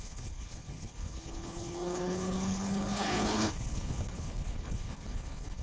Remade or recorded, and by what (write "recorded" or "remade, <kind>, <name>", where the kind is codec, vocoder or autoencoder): remade, codec, HILCodec